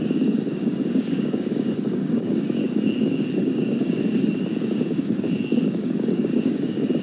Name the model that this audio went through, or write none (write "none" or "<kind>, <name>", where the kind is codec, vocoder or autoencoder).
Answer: codec, DAC